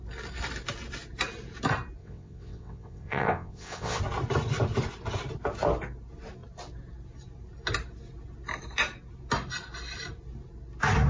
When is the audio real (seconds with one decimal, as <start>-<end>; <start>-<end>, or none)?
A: 0.0-2.0; 4.0-11.1